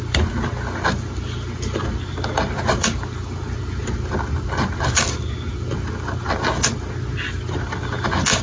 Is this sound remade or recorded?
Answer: recorded